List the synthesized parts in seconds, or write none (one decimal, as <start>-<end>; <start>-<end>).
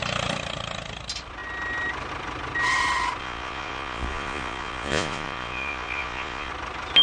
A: 3.2-6.5